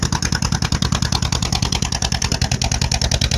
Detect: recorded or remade recorded